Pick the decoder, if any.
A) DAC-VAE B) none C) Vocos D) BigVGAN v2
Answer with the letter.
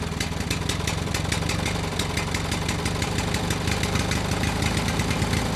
B